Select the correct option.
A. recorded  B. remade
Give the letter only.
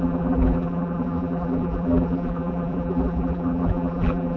B